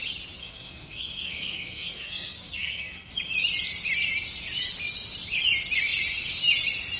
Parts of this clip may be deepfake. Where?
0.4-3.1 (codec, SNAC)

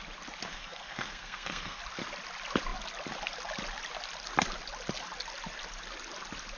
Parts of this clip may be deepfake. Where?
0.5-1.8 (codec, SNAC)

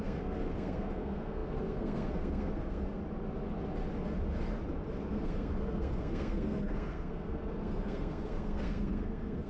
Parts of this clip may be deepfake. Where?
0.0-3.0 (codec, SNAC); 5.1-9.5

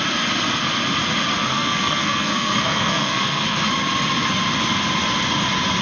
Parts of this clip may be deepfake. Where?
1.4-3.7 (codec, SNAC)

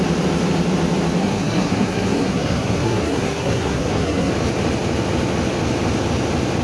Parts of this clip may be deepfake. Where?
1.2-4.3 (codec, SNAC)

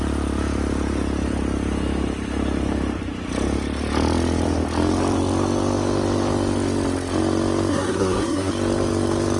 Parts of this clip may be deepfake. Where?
7.7-8.5 (codec, SNAC)

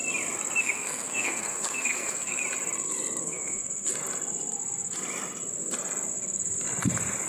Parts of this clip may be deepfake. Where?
0.6-2.4 (codec, SNAC); 3.2-3.9

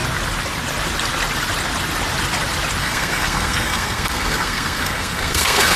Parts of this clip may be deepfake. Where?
2.8-5.8 (codec, SNAC)